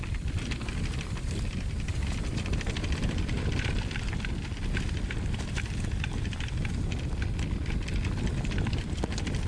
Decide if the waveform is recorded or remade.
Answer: remade